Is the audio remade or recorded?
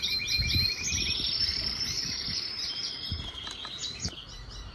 remade